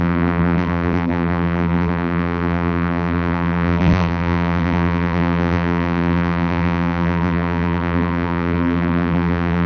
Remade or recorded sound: remade